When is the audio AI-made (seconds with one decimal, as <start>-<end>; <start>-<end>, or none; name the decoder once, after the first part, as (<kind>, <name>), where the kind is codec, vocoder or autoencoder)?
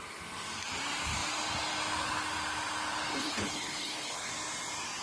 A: 3.2-4.3 (codec, HILCodec)